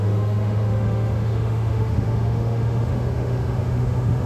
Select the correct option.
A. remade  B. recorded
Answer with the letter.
A